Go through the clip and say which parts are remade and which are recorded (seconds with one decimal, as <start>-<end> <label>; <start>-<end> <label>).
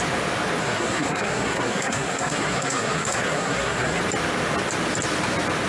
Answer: 0.0-0.6 recorded; 0.6-4.0 remade; 4.0-5.7 recorded